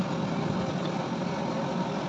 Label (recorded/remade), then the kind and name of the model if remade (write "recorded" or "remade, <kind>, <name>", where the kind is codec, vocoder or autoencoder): recorded